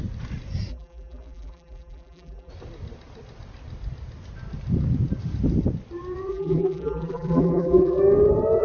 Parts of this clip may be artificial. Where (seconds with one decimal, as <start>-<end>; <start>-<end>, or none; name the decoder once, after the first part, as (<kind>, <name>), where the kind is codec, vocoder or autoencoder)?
0.7-2.5 (vocoder, BigVGAN v2); 6.3-8.0